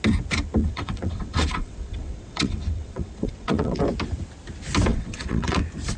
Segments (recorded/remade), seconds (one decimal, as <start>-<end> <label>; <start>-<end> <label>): 0.0-0.6 recorded; 0.6-3.8 remade; 3.8-4.9 recorded; 4.9-5.6 remade; 5.6-6.0 recorded